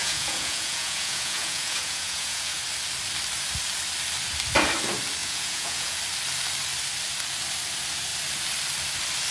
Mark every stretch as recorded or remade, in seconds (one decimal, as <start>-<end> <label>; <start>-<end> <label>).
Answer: 0.0-2.6 remade; 2.6-5.2 recorded; 5.2-6.0 remade; 6.0-9.3 recorded